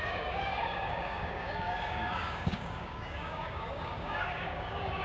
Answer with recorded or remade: remade